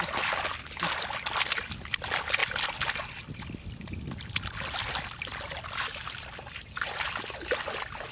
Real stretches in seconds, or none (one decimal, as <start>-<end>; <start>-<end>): 0.0-8.1